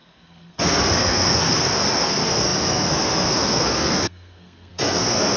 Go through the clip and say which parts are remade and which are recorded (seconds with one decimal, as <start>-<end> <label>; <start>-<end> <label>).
0.0-5.4 remade